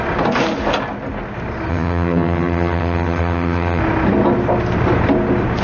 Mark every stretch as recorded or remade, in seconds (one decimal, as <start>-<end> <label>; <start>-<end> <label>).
0.0-1.7 recorded; 1.7-3.8 remade; 3.8-5.6 recorded